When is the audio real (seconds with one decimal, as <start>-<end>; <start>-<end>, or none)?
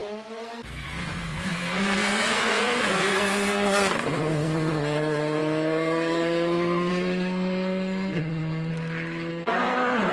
8.7-9.3